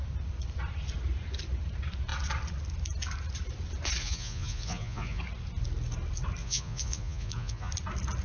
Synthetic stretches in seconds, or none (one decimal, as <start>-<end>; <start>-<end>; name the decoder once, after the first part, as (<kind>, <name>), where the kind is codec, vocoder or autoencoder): 4.0-5.2 (vocoder, Vocos); 6.4-7.7